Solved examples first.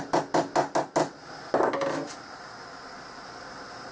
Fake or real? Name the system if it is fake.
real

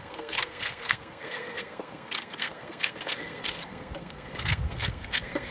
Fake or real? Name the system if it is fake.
fake, codec, SNAC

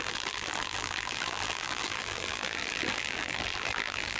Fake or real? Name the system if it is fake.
fake, vocoder, BigVGAN v2